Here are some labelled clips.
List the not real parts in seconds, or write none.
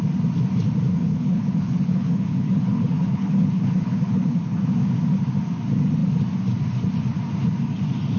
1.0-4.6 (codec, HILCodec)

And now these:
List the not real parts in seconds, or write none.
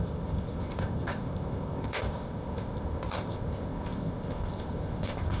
0.0-5.4 (codec, ZipCodec)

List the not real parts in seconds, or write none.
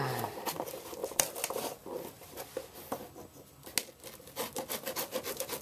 1.0-2.4 (vocoder, BigVGAN v2)